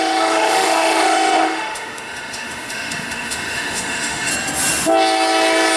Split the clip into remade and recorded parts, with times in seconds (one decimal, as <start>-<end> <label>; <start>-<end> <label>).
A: 0.0-4.3 remade; 4.3-5.8 recorded